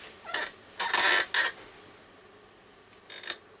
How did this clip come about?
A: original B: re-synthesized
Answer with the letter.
A